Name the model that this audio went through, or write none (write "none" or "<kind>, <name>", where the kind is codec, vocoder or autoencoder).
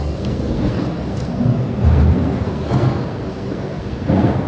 codec, SNAC